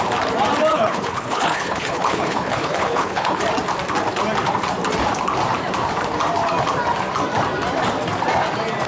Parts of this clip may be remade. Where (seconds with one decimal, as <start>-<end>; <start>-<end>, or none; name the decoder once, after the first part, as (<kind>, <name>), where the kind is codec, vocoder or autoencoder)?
0.7-3.4 (codec, HILCodec)